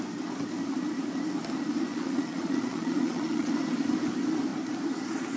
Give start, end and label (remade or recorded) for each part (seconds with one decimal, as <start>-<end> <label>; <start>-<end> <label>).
0.0-1.9 recorded; 1.9-3.5 remade; 3.5-5.4 recorded